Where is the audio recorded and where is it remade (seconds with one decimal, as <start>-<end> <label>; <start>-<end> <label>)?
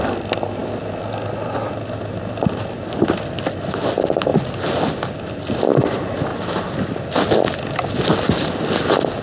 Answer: 0.0-9.2 recorded